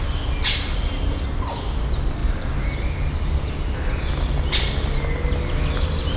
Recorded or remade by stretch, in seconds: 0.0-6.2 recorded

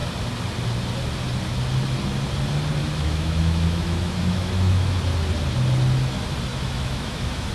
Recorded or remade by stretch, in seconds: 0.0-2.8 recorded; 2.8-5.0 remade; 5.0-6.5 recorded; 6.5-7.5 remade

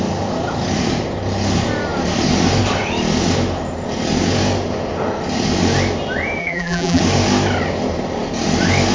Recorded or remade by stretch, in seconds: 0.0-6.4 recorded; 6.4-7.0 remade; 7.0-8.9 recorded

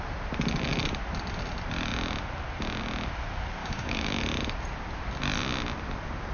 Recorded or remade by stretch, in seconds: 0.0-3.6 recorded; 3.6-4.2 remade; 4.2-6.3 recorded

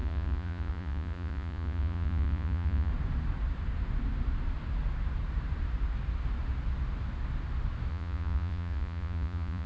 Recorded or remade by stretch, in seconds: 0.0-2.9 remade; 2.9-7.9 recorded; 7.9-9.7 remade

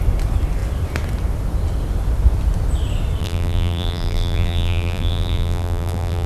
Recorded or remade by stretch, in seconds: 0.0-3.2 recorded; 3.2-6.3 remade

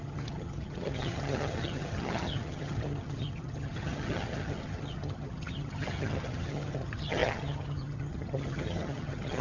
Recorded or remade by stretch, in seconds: 0.0-9.4 remade

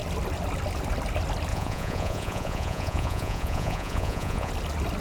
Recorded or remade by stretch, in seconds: 0.0-1.5 recorded; 1.5-4.5 remade; 4.5-5.0 recorded